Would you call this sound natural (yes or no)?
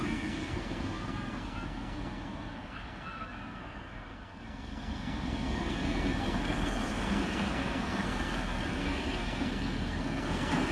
no